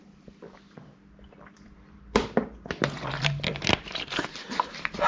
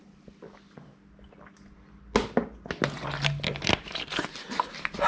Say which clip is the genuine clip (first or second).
second